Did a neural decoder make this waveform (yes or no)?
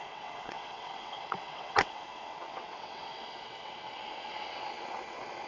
yes